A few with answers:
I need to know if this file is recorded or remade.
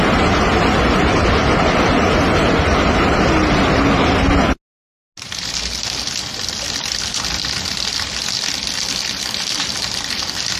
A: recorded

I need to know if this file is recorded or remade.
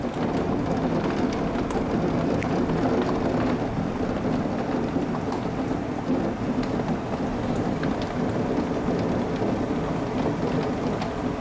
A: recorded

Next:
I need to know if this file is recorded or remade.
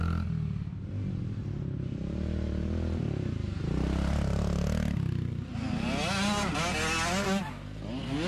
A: recorded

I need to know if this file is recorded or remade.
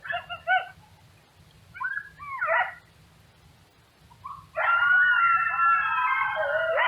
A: recorded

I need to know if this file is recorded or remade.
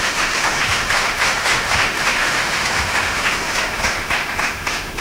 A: remade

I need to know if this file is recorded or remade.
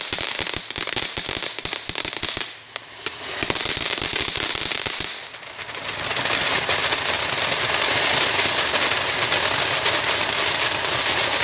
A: recorded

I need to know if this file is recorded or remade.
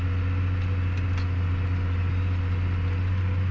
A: recorded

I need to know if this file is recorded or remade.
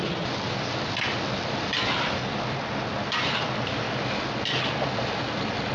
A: recorded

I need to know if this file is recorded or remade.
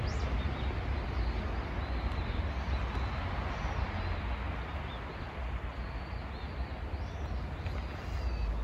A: recorded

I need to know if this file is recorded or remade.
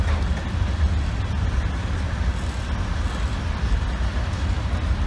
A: recorded